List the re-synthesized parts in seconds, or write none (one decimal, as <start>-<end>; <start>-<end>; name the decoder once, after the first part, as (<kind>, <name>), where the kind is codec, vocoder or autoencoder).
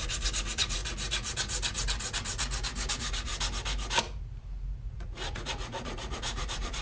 0.0-0.8 (vocoder, Vocos); 2.9-3.3; 4.9-6.8